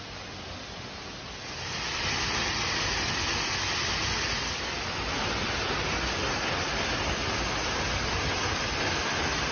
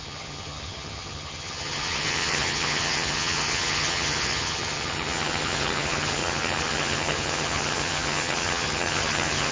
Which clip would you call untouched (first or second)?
first